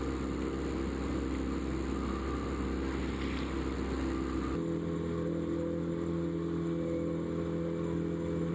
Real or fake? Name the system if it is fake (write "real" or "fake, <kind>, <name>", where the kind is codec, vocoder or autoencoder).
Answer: real